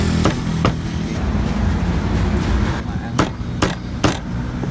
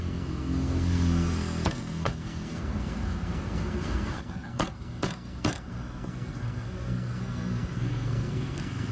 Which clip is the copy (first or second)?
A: second